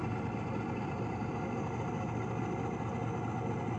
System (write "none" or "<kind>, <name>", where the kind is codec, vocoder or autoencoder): none